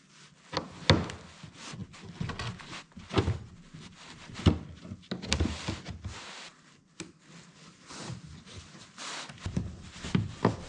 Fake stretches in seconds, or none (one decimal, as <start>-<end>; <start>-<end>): none